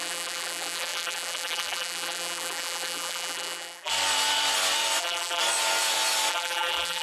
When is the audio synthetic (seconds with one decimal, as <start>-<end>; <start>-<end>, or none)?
0.0-3.9; 5.0-5.4; 6.3-7.0